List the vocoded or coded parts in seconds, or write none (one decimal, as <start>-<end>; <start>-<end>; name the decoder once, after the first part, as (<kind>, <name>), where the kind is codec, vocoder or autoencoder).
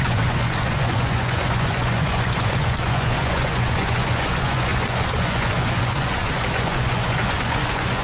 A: 0.0-8.0 (vocoder, Vocos)